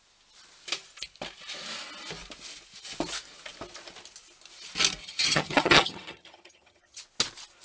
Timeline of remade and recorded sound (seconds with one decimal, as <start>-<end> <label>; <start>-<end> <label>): 0.0-5.0 recorded; 5.0-7.0 remade; 7.0-7.6 recorded